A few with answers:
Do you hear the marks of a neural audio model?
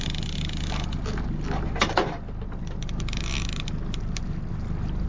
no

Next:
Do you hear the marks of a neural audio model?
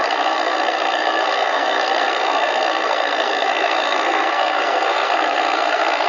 yes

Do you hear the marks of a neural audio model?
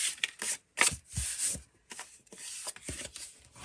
no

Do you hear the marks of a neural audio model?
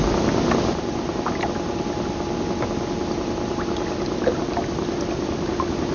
no